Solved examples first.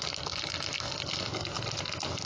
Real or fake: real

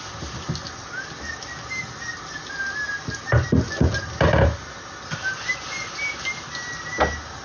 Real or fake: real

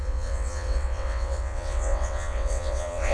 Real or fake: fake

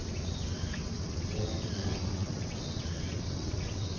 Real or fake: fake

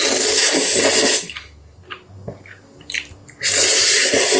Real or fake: real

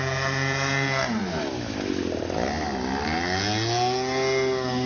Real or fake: real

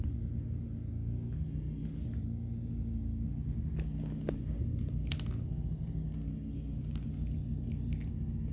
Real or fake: real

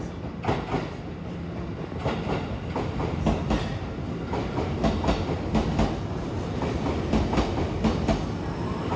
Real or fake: real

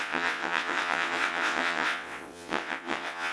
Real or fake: fake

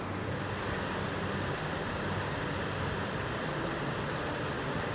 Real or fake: real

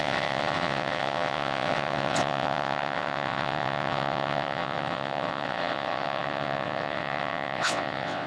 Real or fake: fake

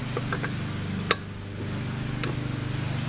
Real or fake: real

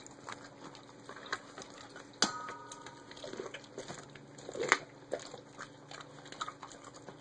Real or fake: real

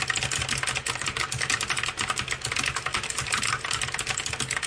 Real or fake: real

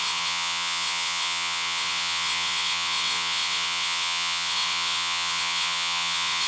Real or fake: fake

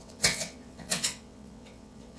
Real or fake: fake